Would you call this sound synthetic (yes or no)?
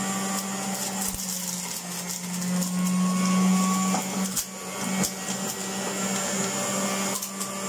no